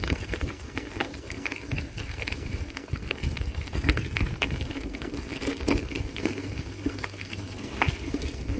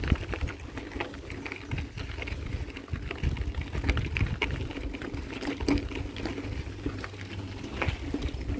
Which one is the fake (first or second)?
first